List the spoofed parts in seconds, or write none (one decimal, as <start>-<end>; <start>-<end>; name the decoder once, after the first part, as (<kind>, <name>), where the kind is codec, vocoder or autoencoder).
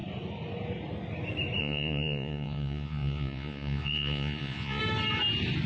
1.6-4.8 (vocoder, Vocos)